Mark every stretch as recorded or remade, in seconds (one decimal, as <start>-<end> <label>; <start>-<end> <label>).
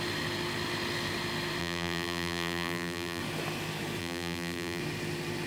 0.0-1.6 recorded; 1.6-3.2 remade; 3.2-4.0 recorded; 4.0-4.8 remade; 4.8-5.5 recorded